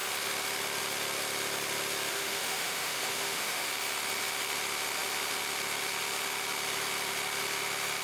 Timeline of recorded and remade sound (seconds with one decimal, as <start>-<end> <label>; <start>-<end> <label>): 0.0-2.1 recorded; 2.1-3.7 remade; 3.7-8.0 recorded